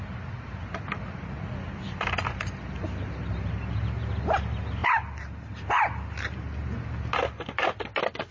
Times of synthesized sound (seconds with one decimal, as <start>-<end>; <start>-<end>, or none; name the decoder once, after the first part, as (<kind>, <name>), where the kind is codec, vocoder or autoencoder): none